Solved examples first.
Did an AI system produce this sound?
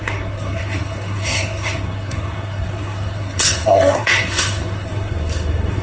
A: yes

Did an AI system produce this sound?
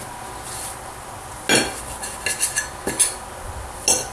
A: no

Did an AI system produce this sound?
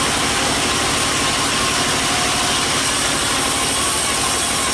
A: no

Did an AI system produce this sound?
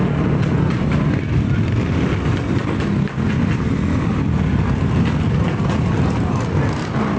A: no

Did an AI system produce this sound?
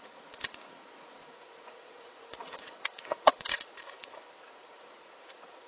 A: yes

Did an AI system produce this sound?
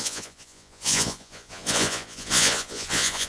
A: yes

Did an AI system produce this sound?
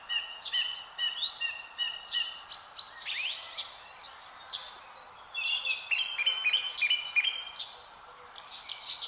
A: yes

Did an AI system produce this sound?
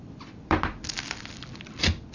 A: no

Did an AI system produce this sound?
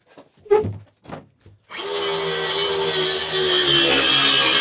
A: no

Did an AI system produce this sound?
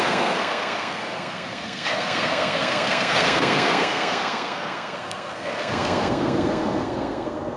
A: yes